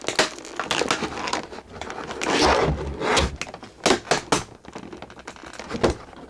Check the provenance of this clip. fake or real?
real